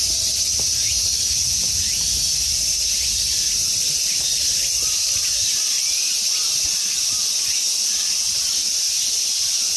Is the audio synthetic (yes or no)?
no